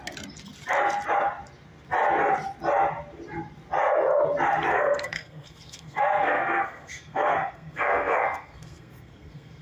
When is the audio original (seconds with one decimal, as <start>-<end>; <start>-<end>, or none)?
0.0-4.7